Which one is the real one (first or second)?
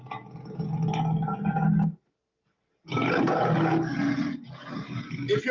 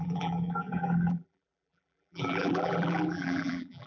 first